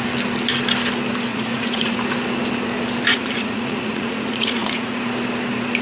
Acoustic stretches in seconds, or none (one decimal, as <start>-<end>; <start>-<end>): 0.0-1.3; 1.9-3.1; 5.0-5.8